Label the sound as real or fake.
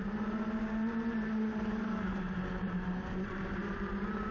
fake